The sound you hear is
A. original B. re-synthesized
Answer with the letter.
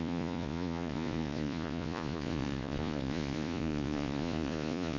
B